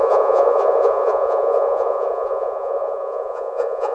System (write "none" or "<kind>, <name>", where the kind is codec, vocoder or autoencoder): vocoder, Vocos